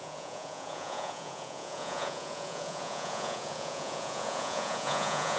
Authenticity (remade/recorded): remade